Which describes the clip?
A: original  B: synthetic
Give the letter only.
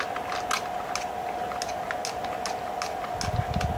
A